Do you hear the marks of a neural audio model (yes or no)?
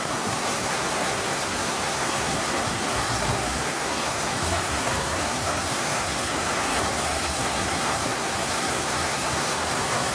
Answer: yes